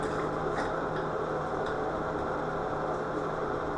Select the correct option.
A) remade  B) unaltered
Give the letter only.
A